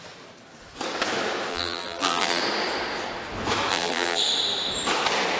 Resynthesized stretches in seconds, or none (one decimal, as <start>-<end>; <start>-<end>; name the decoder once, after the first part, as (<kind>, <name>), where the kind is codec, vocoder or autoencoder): 1.5-2.4 (vocoder, BigVGAN v2); 3.7-4.2